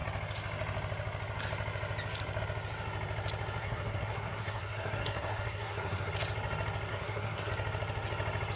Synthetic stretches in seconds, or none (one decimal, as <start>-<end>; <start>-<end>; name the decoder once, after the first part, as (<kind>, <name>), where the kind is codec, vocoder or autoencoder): 3.6-6.1 (codec, SNAC); 6.9-7.5